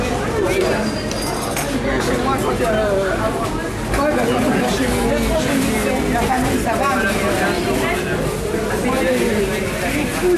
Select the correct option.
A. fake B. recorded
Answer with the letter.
B